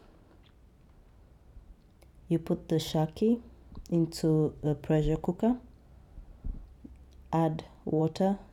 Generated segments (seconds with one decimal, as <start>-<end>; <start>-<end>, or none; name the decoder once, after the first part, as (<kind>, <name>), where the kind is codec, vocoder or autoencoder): 4.2-5.4 (vocoder, BigVGAN v2)